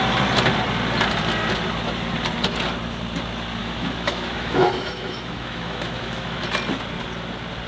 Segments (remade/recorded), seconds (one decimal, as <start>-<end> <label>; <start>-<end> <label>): 0.0-3.6 recorded; 3.6-6.4 remade; 6.4-7.7 recorded